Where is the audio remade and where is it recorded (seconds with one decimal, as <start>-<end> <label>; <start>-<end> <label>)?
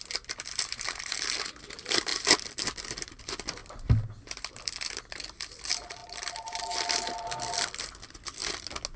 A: 0.0-3.6 remade; 3.6-4.5 recorded; 4.5-6.0 remade; 6.0-7.2 recorded; 7.2-8.4 remade; 8.4-9.0 recorded